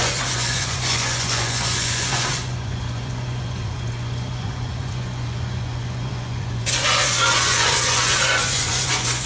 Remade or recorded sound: remade